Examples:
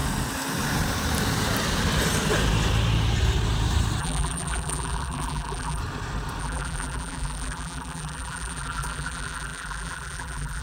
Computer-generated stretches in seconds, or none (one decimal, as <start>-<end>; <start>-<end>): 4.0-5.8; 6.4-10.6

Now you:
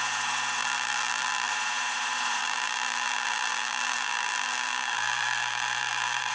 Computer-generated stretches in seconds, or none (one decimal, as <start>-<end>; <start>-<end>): 0.6-1.5; 2.4-6.3

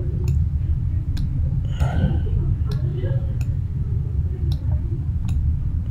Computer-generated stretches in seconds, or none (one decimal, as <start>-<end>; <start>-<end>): 0.0-0.8; 1.4-5.9